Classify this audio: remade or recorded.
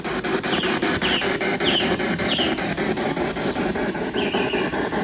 recorded